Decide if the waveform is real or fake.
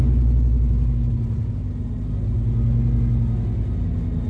real